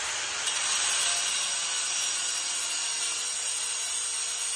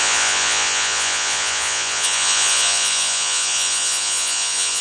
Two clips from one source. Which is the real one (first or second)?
first